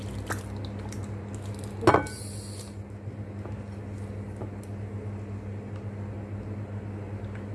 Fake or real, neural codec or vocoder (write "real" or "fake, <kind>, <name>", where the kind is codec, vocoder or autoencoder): real